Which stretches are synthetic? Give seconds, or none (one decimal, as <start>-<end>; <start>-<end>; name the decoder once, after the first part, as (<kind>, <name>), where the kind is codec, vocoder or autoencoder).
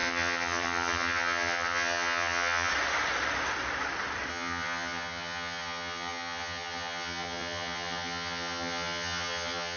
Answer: 0.0-2.7 (vocoder, HiFi-GAN); 4.3-9.8